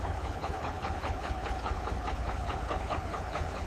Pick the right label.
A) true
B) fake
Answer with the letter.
B